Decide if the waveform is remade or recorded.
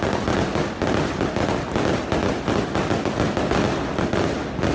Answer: recorded